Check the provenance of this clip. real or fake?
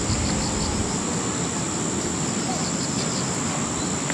real